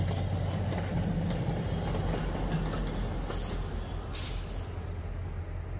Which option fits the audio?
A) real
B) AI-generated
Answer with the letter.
A